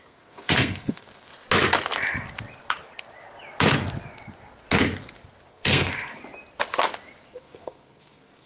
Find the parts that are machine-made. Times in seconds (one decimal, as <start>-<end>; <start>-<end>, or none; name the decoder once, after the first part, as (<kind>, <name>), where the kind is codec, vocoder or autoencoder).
0.0-1.3 (codec, SNAC); 5.5-6.1; 7.3-8.5